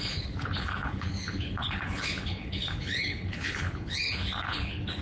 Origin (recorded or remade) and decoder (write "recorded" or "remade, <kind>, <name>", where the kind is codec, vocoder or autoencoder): remade, codec, HILCodec